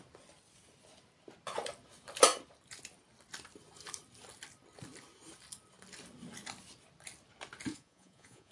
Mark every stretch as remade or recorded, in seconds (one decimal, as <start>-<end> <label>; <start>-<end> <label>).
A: 0.0-7.7 recorded; 7.7-8.5 remade